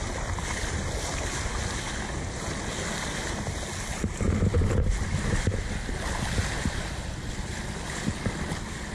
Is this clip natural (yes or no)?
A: yes